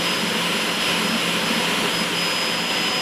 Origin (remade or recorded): recorded